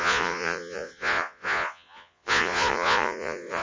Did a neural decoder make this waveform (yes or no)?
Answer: yes